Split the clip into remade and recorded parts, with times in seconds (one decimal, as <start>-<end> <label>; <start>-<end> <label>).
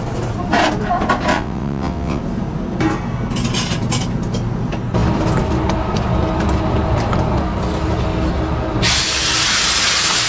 0.0-1.3 recorded; 1.3-2.2 remade; 2.2-10.3 recorded